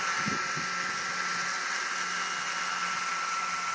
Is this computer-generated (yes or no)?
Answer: no